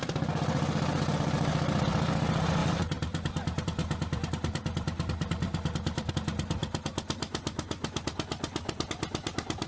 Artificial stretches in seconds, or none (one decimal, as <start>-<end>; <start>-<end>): 2.6-6.1